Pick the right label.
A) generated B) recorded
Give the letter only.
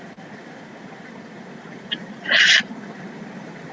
B